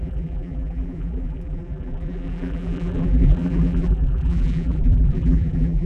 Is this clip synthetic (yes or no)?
yes